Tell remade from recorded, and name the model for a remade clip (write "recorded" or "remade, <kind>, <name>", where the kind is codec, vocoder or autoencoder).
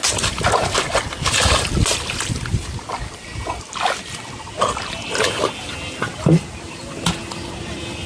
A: recorded